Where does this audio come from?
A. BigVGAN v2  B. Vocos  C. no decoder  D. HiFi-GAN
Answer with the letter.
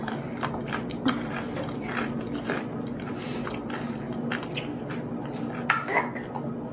C